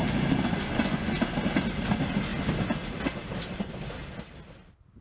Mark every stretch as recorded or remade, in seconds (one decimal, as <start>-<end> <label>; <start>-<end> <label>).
0.0-0.7 recorded; 0.7-1.2 remade; 1.2-5.0 recorded